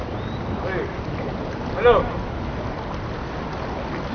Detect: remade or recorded recorded